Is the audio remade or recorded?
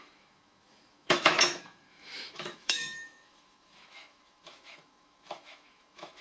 remade